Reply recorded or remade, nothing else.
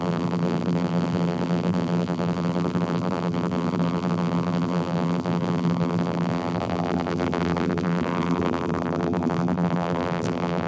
remade